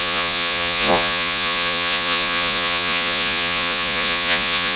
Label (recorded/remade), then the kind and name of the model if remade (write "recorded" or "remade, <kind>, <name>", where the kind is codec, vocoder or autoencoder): remade, vocoder, Vocos